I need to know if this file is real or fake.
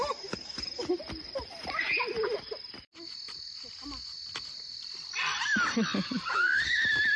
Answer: real